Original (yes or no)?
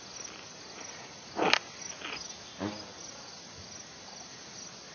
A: yes